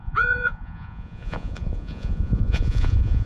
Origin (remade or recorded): remade